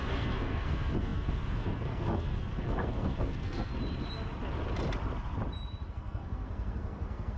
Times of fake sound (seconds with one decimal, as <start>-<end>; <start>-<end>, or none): 0.0-3.7; 5.9-7.4